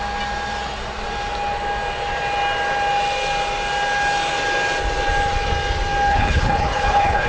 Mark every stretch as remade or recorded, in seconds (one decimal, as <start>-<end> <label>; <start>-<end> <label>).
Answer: 0.0-6.1 recorded; 6.1-7.3 remade